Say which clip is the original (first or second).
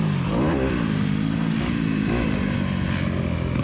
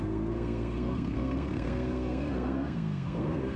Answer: first